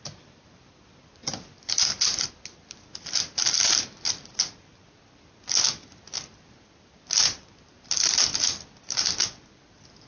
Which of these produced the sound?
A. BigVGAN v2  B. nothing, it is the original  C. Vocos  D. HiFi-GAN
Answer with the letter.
B